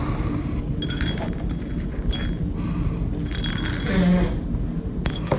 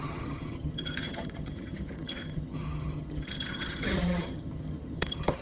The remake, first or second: second